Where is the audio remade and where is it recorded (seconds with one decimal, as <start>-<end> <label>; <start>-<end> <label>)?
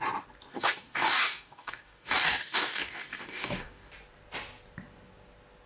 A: 0.0-0.5 recorded; 0.5-3.9 remade; 3.9-5.7 recorded